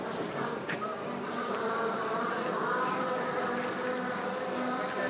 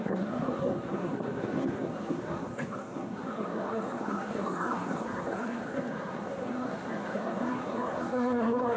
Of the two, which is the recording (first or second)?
first